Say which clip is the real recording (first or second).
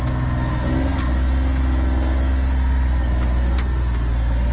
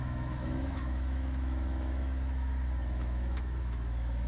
first